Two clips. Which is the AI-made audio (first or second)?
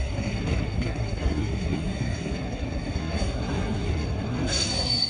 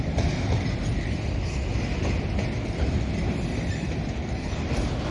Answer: first